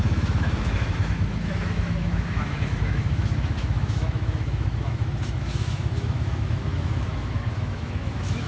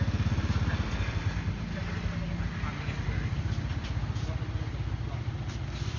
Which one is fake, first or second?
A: first